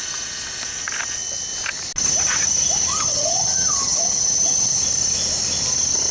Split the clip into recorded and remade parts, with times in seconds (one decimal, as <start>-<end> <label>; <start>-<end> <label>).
0.0-2.9 recorded; 2.9-4.8 remade; 4.8-6.1 recorded